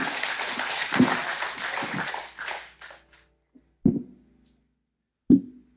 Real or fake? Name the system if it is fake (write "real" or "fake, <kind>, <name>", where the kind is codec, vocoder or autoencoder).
real